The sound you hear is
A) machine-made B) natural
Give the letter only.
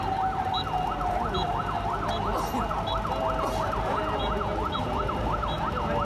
B